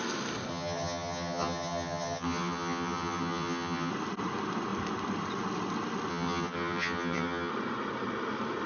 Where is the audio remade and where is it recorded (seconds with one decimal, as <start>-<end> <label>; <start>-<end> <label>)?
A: 0.0-0.5 recorded; 0.5-3.9 remade; 3.9-6.1 recorded; 6.1-7.5 remade; 7.5-8.7 recorded